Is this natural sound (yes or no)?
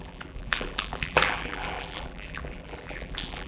no